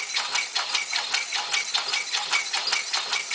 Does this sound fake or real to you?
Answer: real